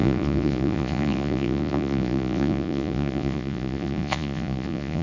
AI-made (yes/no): yes